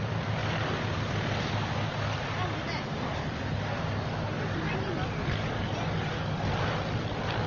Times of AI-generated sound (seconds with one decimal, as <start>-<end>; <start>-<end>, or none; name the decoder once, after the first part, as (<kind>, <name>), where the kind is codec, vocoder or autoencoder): none